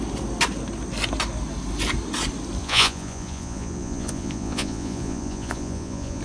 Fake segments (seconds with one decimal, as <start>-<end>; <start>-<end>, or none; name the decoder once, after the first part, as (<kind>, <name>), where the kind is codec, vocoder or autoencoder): 2.6-6.2 (vocoder, Vocos)